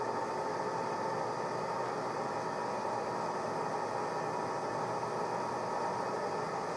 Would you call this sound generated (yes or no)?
no